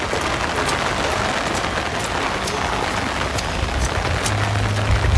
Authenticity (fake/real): real